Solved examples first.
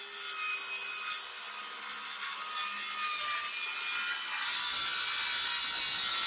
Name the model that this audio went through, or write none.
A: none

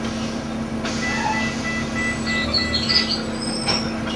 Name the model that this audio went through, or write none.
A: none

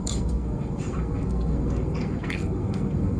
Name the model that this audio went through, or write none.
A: codec, SNAC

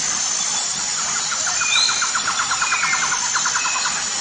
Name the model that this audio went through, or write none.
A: none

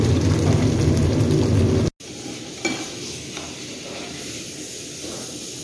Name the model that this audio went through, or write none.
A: none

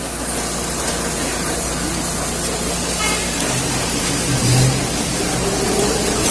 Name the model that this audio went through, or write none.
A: none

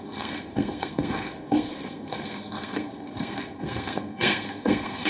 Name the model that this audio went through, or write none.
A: codec, SNAC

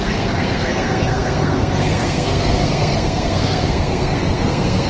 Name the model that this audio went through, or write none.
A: codec, SNAC